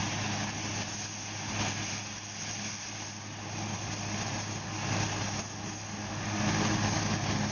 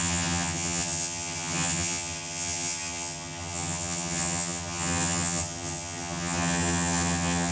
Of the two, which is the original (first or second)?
first